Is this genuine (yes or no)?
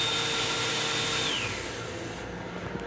yes